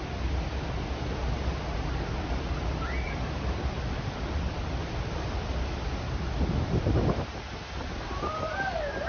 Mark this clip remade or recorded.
recorded